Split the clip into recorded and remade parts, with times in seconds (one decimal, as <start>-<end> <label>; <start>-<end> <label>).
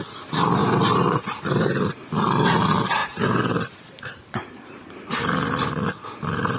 0.0-0.6 recorded; 0.6-1.9 remade; 1.9-3.0 recorded; 3.0-5.3 remade; 5.3-6.6 recorded